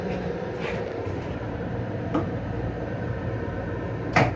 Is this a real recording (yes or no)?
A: no